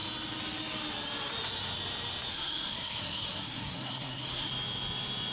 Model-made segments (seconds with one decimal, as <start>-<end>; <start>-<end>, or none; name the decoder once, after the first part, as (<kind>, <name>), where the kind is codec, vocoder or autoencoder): 2.3-4.5 (codec, SNAC)